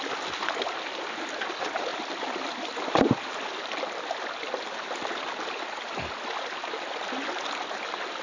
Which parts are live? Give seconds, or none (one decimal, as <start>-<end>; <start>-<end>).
0.0-1.9; 2.9-8.2